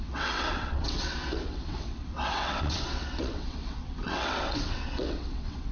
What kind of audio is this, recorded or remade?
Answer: remade